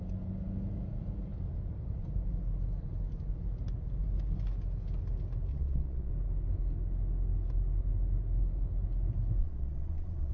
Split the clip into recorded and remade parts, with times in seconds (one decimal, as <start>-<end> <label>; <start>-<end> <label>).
0.0-5.5 recorded; 5.5-6.1 remade; 6.1-9.4 recorded; 9.4-10.3 remade